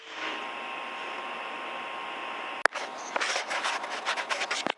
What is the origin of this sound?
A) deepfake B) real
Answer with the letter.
B